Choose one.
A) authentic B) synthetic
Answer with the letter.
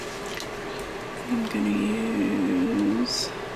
A